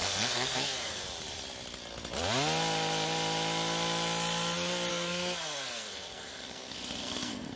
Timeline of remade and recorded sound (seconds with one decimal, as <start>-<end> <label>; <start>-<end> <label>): 0.0-1.0 remade; 1.0-4.9 recorded; 4.9-7.6 remade

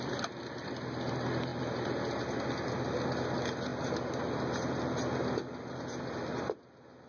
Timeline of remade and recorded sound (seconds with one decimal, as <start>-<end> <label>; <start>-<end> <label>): 0.0-7.1 recorded

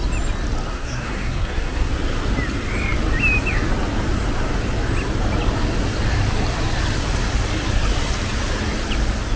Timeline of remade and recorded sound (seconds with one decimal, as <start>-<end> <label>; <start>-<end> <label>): 0.0-0.7 recorded; 0.7-1.9 remade; 1.9-9.4 recorded

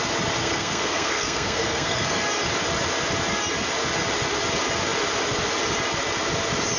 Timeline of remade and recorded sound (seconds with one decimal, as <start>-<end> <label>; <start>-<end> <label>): 0.0-0.4 recorded; 0.4-2.2 remade; 2.2-6.8 recorded

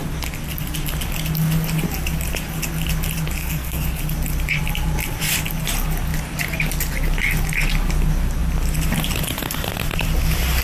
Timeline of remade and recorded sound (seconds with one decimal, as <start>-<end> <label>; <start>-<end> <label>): 0.0-3.4 recorded; 3.4-4.0 remade; 4.0-10.6 recorded

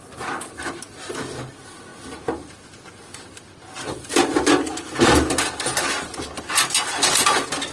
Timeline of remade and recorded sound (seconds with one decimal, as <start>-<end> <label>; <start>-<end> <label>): 0.0-7.7 recorded

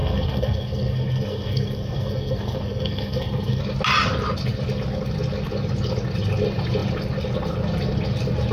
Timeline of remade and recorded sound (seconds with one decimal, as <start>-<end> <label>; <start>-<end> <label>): 0.0-3.6 remade; 3.6-8.5 recorded

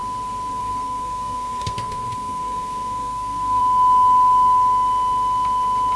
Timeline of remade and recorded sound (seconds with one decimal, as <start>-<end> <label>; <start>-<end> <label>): 0.0-0.6 recorded; 0.6-3.6 remade; 3.6-6.0 recorded